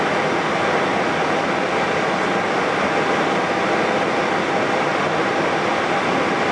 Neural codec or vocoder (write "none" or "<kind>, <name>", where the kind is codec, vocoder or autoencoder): none